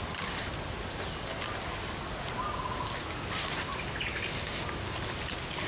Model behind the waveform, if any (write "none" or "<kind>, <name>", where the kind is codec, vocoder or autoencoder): none